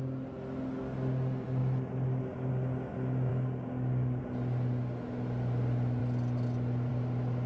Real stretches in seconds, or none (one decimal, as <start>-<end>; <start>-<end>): 0.0-3.3; 4.2-7.5